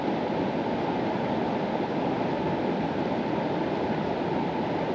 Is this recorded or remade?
recorded